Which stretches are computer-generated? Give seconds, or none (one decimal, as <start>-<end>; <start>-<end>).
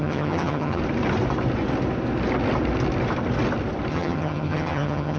0.0-0.8; 3.9-5.2